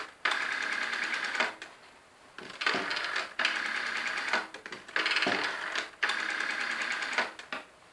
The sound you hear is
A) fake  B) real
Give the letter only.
B